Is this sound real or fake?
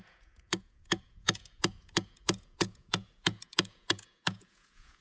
fake